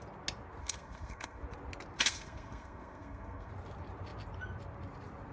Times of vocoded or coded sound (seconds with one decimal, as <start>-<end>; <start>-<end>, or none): 0.6-1.4; 2.0-3.5